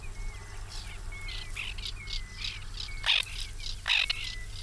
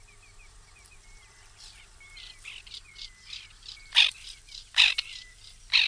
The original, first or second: first